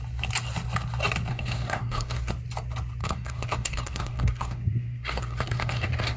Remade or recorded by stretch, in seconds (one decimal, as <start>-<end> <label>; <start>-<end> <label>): 0.0-1.3 recorded; 1.3-2.3 remade; 2.3-3.0 recorded; 3.0-6.2 remade